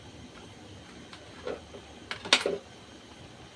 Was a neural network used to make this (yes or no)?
no